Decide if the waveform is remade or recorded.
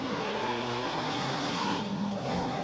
remade